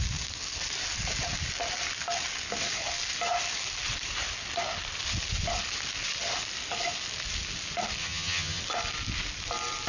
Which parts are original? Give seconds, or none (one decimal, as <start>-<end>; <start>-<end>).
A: 0.0-8.0; 8.6-9.9